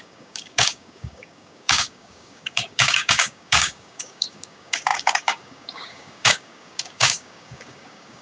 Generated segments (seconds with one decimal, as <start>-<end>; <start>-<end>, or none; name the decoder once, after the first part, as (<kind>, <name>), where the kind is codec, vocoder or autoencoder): 0.0-8.2 (codec, DAC)